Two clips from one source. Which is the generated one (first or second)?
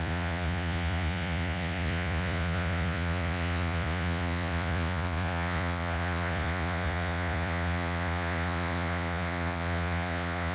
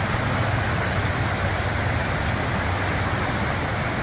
first